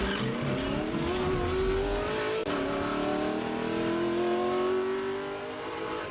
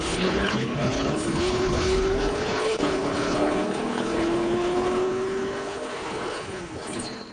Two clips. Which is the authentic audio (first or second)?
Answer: first